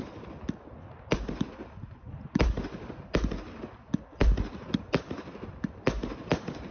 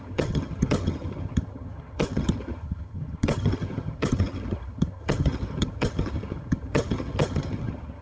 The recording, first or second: first